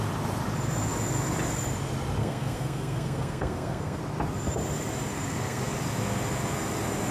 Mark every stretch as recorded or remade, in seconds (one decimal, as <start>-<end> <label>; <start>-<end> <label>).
0.0-2.2 recorded; 2.2-4.0 remade; 4.0-5.1 recorded; 5.1-5.6 remade; 5.6-7.1 recorded